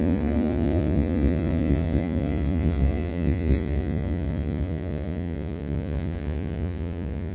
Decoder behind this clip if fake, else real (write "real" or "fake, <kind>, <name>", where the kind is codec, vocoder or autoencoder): fake, vocoder, Vocos